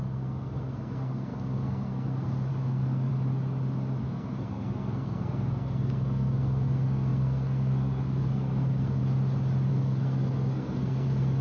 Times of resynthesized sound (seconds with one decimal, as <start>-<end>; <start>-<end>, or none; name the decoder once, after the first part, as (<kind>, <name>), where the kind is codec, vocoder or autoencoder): 0.0-3.1 (codec, SNAC); 4.0-9.0; 9.7-11.4